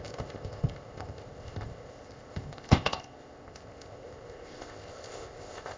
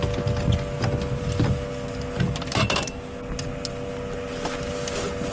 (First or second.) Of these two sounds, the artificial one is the first